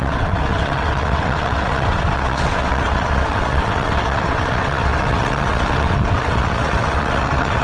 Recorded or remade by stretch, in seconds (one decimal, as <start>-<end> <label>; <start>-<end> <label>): 0.0-7.6 remade